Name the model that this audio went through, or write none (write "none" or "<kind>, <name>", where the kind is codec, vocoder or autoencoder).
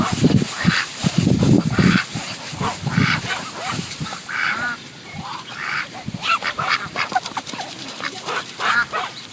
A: vocoder, BigVGAN v2